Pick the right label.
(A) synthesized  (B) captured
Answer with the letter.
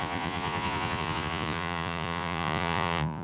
A